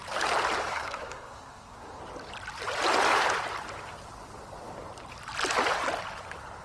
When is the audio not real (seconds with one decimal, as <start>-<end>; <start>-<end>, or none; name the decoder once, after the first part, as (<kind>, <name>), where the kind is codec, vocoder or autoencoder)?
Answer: 0.7-2.0 (codec, SNAC)